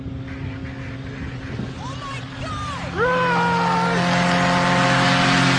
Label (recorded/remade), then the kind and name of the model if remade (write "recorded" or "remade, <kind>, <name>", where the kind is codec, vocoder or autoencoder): recorded